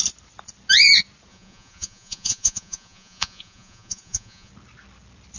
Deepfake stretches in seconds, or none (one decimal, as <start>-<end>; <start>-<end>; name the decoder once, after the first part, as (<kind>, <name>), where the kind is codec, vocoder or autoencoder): 1.3-4.5 (vocoder, Vocos)